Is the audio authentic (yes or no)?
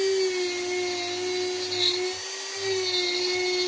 yes